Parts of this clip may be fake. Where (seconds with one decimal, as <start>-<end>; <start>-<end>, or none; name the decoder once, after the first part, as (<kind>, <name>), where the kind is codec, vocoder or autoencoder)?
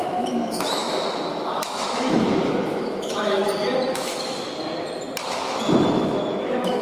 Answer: 0.0-3.4 (autoencoder, DAC-VAE); 3.9-4.5; 5.3-6.8